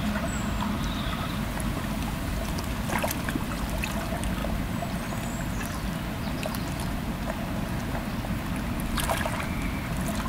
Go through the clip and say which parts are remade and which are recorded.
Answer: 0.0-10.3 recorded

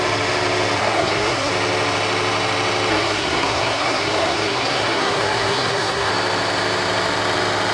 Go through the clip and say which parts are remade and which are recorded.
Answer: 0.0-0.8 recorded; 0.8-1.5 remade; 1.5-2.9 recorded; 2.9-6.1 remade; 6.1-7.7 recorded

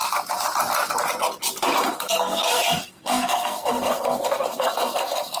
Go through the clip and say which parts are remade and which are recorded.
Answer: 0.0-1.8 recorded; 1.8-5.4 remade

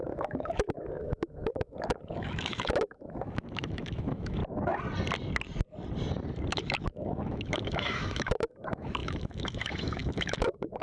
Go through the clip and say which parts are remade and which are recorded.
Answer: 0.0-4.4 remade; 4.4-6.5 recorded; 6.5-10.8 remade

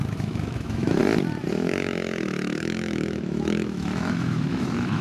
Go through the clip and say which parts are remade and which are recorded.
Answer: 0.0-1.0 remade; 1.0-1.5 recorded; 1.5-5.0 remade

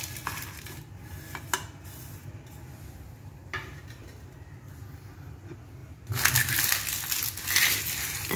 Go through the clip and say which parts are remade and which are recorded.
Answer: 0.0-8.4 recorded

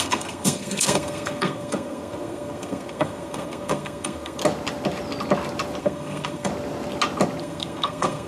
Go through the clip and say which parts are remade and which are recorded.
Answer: 0.0-4.4 remade; 4.4-5.8 recorded; 5.8-6.5 remade; 6.5-7.4 recorded; 7.4-8.3 remade

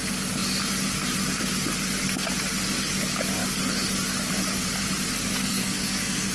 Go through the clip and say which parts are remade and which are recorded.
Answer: 0.0-5.4 recorded; 5.4-6.3 remade